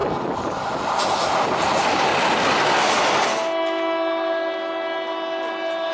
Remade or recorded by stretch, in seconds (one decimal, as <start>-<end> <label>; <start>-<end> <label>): 0.0-1.0 recorded; 1.0-2.1 remade; 2.1-5.9 recorded